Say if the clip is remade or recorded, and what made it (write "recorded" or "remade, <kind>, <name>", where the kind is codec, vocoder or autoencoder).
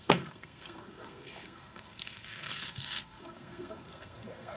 remade, codec, SNAC